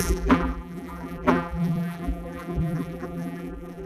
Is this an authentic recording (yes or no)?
no